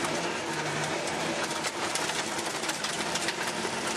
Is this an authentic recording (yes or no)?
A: no